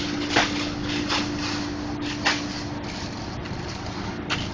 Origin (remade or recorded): recorded